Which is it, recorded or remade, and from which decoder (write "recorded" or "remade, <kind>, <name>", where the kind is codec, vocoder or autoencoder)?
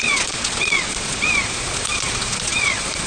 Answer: remade, vocoder, Vocos